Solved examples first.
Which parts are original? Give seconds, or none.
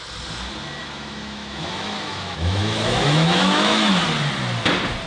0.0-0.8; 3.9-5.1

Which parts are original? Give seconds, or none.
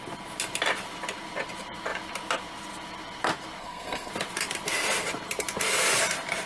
0.0-3.6; 4.1-6.5